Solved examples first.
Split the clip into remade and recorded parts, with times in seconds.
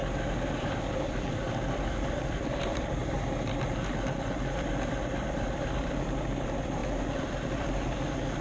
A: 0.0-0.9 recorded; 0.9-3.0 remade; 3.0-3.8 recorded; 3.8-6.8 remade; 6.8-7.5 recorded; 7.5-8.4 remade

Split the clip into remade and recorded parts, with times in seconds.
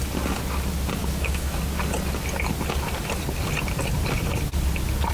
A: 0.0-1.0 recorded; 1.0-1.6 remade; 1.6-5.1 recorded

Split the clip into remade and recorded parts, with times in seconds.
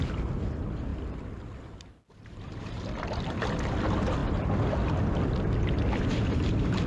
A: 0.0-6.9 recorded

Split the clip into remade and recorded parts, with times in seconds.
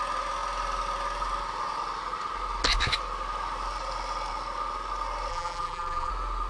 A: 0.0-5.3 recorded; 5.3-6.1 remade; 6.1-6.5 recorded